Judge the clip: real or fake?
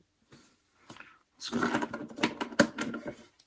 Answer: real